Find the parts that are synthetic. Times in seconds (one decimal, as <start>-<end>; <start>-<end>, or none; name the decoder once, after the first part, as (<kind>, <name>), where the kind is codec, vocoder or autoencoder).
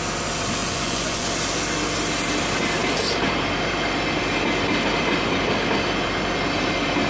0.6-1.3 (vocoder, Vocos)